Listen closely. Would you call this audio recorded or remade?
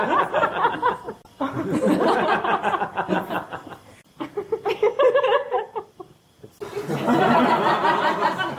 recorded